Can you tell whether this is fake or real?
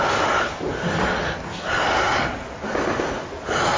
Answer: real